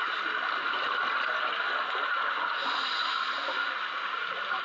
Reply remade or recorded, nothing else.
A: recorded